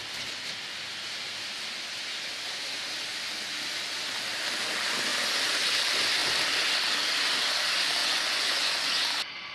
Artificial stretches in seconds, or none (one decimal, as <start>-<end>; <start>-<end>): 8.0-8.9